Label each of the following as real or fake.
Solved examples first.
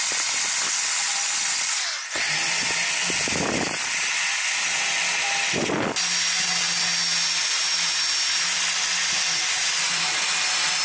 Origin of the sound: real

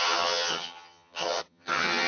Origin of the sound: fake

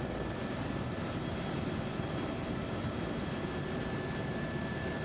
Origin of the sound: real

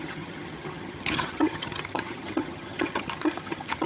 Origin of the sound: fake